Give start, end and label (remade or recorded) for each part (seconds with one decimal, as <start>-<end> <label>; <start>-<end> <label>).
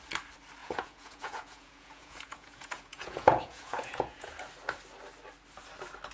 0.0-0.6 recorded; 0.6-4.3 remade; 4.3-6.1 recorded